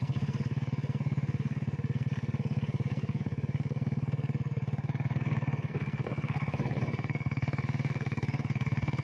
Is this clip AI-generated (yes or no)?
yes